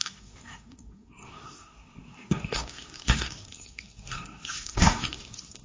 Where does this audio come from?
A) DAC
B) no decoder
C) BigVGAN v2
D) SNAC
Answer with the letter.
D